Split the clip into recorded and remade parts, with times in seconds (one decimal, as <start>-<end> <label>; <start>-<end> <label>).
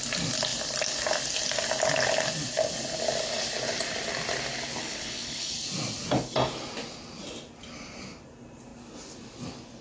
0.0-4.8 recorded; 4.8-5.5 remade; 5.5-9.8 recorded